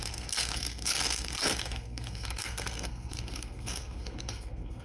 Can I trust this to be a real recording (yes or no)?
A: no